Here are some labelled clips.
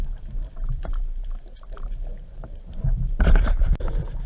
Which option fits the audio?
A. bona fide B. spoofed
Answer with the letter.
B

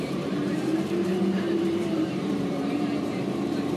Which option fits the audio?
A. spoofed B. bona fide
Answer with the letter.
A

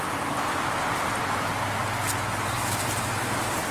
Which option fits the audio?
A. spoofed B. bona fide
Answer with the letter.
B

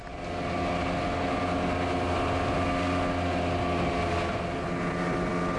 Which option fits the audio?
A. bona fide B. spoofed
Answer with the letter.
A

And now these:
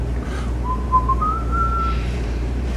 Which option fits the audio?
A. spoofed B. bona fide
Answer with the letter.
A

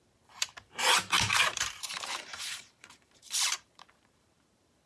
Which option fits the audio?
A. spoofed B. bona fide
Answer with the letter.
A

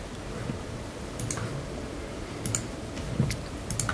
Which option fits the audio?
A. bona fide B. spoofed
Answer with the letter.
A